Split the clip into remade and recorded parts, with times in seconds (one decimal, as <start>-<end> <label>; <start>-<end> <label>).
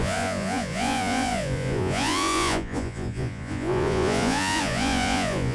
0.0-5.5 remade